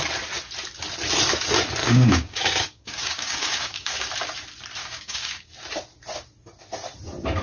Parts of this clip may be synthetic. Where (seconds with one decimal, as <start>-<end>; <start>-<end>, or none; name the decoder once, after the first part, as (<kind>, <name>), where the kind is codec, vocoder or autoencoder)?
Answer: 1.8-4.1 (codec, DAC); 4.8-5.5